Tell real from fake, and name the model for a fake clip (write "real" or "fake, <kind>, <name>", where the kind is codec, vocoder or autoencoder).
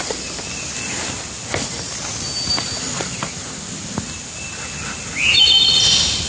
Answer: real